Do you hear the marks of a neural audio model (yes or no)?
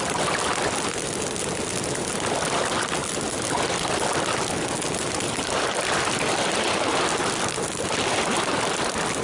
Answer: no